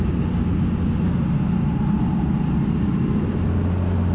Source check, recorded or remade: recorded